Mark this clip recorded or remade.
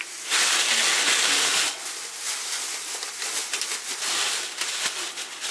recorded